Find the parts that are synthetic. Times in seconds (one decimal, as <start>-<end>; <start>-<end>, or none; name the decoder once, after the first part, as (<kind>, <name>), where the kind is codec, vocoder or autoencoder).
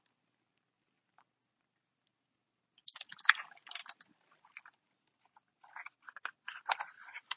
none